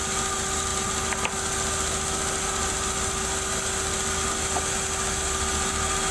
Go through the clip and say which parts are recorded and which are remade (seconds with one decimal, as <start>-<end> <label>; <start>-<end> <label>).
0.0-6.1 recorded